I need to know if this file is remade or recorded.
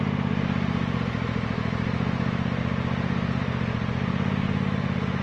recorded